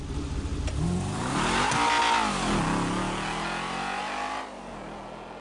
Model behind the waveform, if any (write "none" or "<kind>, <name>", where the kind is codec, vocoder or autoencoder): none